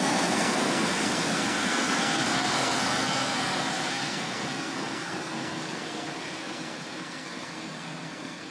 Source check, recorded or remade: remade